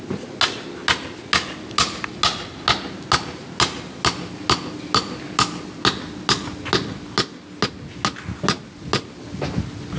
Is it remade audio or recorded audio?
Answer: recorded